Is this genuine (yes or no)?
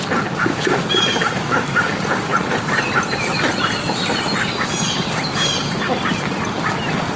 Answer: yes